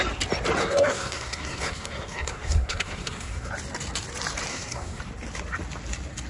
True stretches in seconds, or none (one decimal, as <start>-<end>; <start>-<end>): 0.0-0.6; 3.5-4.5; 5.0-6.3